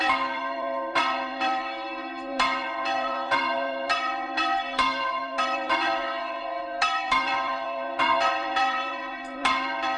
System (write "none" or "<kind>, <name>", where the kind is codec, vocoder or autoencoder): vocoder, BigVGAN v2